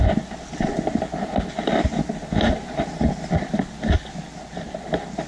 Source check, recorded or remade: recorded